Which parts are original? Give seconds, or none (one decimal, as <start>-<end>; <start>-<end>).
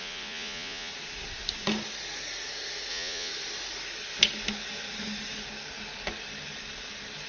0.9-2.9; 3.3-7.3